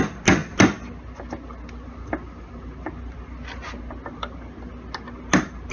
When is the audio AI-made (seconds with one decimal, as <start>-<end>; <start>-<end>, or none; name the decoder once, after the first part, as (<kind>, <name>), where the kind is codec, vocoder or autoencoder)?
none